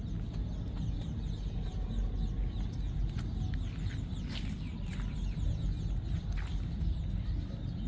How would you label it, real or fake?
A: real